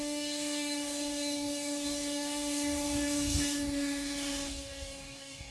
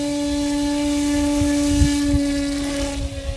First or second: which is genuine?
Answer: second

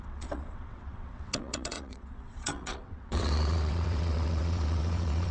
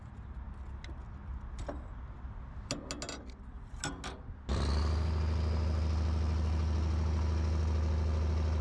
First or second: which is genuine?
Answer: second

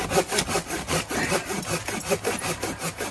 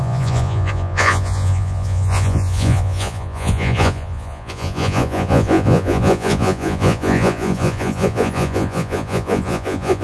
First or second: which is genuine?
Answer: first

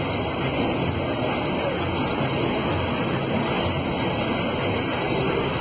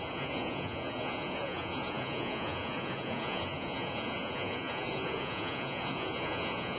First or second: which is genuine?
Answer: first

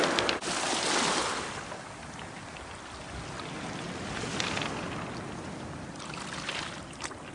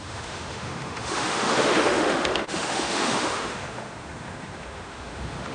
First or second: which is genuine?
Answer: first